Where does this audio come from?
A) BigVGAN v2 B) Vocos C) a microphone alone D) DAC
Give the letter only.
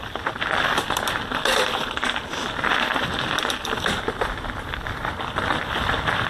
C